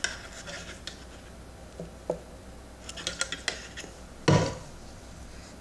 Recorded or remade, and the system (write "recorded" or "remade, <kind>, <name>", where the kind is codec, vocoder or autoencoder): recorded